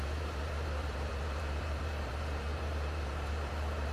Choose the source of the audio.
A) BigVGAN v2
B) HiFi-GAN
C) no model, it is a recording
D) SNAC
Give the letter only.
A